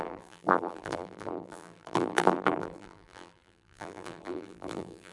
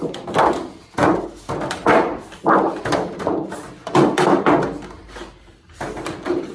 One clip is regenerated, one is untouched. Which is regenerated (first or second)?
first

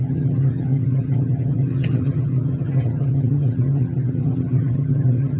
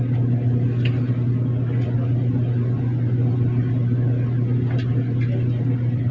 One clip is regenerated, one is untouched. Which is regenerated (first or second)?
first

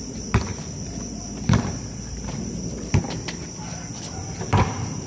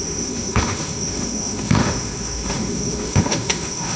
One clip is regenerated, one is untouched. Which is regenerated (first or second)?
second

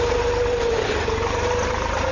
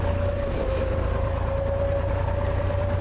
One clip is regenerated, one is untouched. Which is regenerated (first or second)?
first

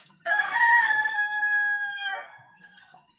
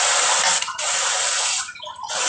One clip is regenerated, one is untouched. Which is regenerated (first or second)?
first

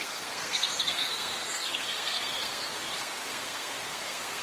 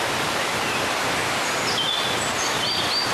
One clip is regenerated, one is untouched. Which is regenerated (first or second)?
first